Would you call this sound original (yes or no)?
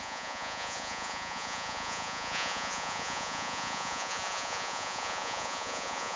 no